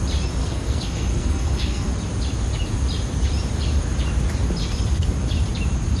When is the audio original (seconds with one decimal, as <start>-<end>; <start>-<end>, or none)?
0.0-0.4; 1.9-6.0